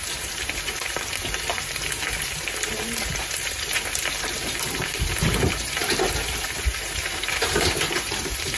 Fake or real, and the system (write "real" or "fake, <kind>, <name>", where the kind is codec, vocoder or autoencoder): fake, vocoder, BigVGAN v2